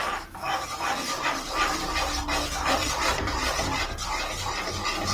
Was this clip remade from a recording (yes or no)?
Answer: no